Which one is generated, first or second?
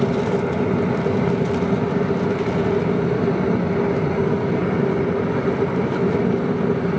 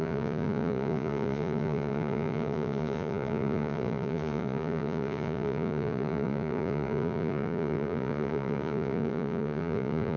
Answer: second